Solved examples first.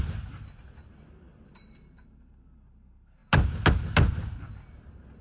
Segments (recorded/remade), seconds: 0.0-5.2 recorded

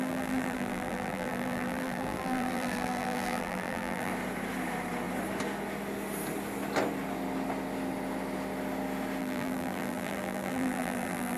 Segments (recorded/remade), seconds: 0.0-4.1 remade; 4.1-9.2 recorded; 9.2-11.4 remade

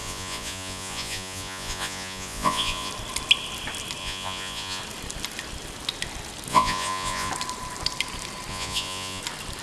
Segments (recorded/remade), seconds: 0.0-2.9 remade; 2.9-4.0 recorded; 4.0-4.8 remade; 4.8-6.5 recorded; 6.5-7.3 remade; 7.3-8.5 recorded; 8.5-9.2 remade; 9.2-9.6 recorded

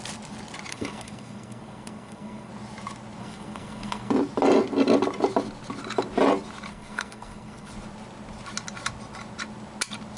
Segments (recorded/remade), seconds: 0.0-0.7 recorded; 0.7-2.5 remade; 2.5-3.2 recorded; 3.2-4.1 remade; 4.1-6.7 recorded; 6.7-7.7 remade; 7.7-10.2 recorded

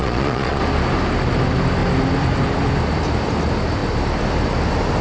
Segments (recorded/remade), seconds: 0.0-0.6 remade; 0.6-5.0 recorded